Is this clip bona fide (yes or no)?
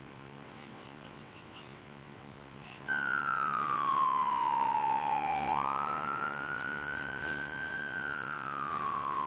no